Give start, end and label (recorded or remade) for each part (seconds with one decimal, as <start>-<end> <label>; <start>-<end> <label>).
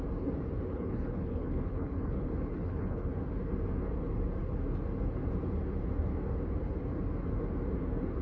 0.0-0.7 recorded; 0.7-3.1 remade; 3.1-8.2 recorded